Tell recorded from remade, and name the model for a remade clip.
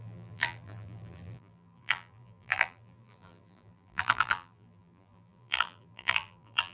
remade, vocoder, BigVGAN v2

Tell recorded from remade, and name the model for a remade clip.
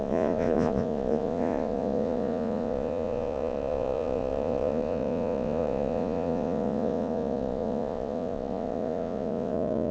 remade, vocoder, Vocos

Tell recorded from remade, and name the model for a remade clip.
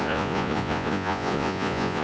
remade, vocoder, Vocos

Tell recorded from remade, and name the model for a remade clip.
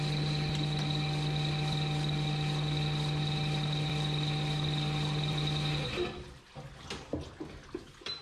recorded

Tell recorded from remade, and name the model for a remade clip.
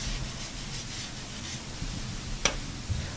recorded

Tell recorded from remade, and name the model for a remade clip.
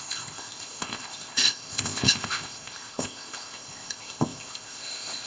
remade, codec, ZipCodec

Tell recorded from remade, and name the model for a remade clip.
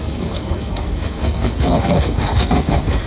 remade, codec, SNAC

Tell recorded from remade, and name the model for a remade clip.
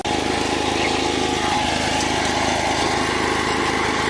recorded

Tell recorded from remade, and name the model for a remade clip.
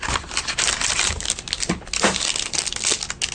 recorded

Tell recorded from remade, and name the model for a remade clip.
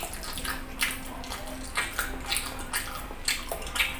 recorded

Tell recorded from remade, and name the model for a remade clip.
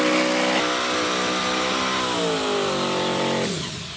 recorded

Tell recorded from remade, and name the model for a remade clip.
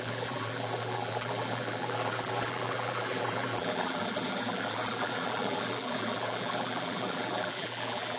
remade, vocoder, BigVGAN v2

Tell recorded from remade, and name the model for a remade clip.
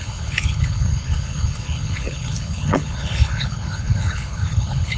remade, codec, HILCodec